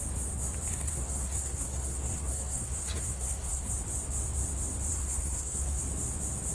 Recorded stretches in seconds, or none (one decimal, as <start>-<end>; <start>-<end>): 0.0-0.7; 3.7-4.9; 5.8-6.5